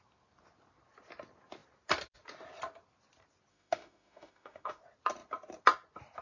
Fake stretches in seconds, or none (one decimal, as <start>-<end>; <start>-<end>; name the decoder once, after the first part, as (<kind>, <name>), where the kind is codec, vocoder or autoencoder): 3.5-4.8 (autoencoder, DAC-VAE)